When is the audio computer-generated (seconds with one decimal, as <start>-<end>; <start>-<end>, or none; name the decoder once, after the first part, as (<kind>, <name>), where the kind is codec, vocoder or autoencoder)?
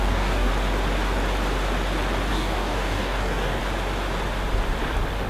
0.0-0.5 (codec, DAC); 2.3-3.6